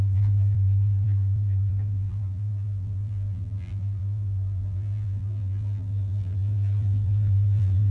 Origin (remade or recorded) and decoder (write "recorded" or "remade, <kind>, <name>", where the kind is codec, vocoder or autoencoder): remade, vocoder, BigVGAN v2